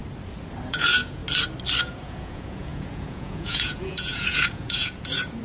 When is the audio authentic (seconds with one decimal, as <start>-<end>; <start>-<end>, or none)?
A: 0.0-0.7; 1.2-1.8